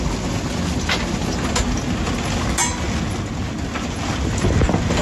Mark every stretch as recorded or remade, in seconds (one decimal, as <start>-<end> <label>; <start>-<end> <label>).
0.0-5.0 recorded